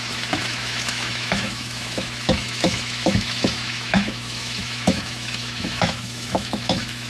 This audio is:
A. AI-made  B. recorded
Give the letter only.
A